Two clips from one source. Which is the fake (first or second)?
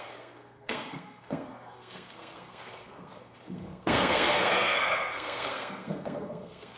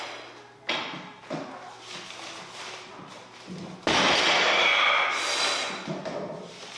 first